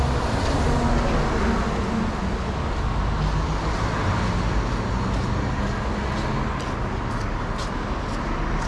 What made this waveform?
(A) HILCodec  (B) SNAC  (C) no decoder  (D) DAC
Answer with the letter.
C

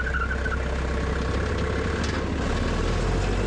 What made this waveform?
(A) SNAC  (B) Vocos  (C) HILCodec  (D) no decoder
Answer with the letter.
D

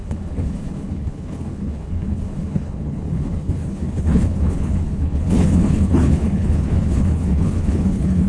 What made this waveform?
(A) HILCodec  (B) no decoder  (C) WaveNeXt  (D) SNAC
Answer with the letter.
A